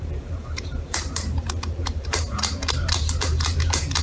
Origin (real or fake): fake